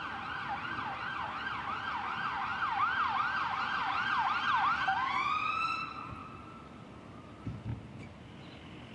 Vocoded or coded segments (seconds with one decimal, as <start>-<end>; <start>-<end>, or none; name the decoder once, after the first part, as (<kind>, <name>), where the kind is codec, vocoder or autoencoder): none